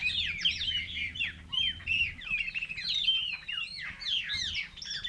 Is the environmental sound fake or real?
real